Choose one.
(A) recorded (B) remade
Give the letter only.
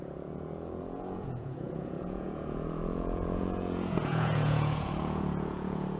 B